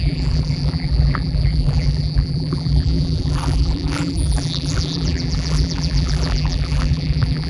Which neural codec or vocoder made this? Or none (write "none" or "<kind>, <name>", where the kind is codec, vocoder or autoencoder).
vocoder, BigVGAN v2